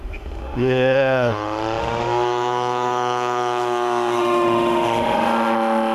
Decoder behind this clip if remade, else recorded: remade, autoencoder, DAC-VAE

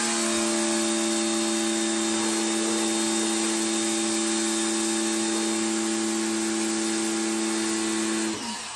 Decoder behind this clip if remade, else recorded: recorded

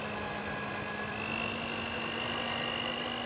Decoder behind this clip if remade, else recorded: recorded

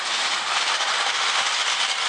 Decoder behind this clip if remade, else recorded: recorded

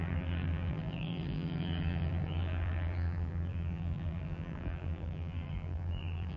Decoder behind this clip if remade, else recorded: remade, vocoder, BigVGAN v2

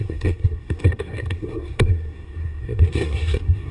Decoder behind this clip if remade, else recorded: remade, codec, SNAC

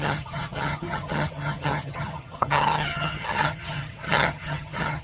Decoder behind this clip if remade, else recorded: remade, vocoder, HiFi-GAN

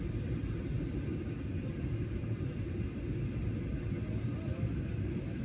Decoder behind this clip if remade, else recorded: recorded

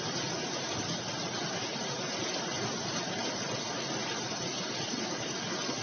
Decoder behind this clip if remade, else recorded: recorded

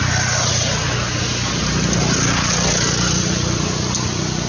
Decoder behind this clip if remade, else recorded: recorded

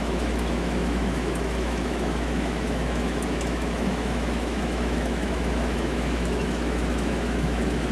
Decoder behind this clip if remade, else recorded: remade, autoencoder, DAC-VAE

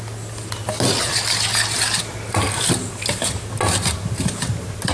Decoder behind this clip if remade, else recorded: recorded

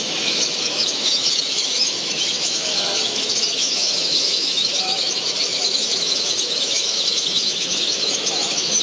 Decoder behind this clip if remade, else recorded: remade, autoencoder, DAC-VAE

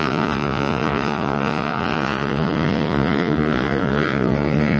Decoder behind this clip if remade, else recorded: remade, vocoder, Vocos